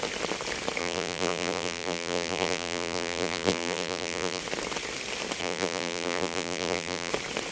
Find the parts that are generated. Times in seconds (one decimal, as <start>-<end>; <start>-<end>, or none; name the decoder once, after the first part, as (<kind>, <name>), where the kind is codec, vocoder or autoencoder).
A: 0.8-4.4 (vocoder, BigVGAN v2); 5.4-7.1